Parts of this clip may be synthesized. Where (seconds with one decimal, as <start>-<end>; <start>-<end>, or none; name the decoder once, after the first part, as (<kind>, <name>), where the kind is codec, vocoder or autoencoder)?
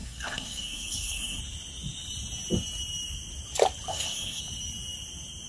0.0-1.4 (codec, SNAC); 3.9-4.4